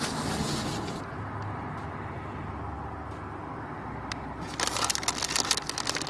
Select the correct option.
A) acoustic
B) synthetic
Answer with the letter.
A